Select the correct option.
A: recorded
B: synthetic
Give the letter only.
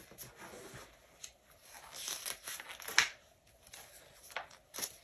A